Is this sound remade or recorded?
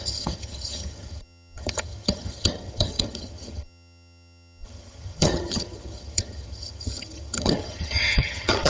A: remade